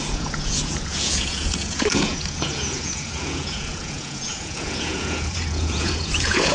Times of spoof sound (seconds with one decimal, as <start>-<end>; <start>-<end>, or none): 0.0-6.5